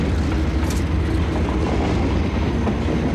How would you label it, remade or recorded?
recorded